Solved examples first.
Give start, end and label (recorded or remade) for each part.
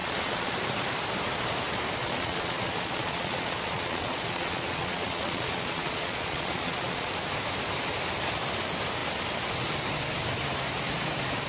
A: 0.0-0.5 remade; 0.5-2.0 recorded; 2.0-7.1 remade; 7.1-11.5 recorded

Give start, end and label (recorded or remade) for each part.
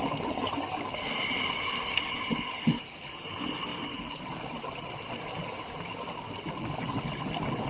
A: 0.0-7.7 recorded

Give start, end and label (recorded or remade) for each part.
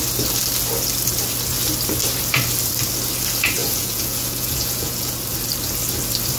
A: 0.0-3.6 recorded; 3.6-5.1 remade; 5.1-6.4 recorded